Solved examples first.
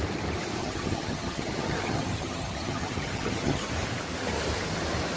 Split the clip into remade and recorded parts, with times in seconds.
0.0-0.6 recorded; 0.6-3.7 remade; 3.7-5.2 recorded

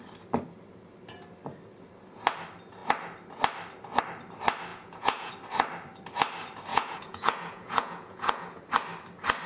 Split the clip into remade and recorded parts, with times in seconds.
0.0-4.7 recorded; 4.7-5.3 remade; 5.3-6.7 recorded; 6.7-8.6 remade; 8.6-9.5 recorded

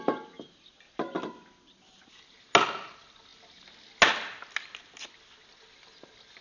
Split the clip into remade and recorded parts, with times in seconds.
0.0-6.4 recorded

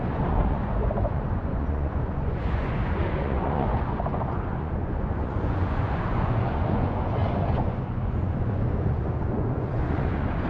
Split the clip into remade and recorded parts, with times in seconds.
0.0-10.5 remade

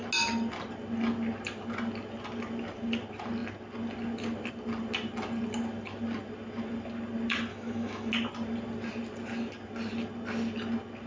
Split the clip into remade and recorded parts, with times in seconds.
0.0-7.5 recorded; 7.5-8.1 remade; 8.1-11.1 recorded

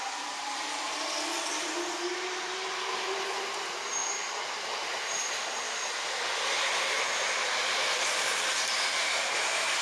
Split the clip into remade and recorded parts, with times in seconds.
0.0-9.8 recorded

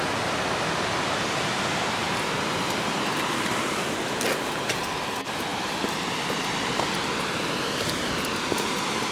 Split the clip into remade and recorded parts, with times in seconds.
0.0-9.1 recorded